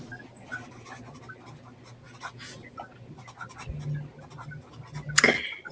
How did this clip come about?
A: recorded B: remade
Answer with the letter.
A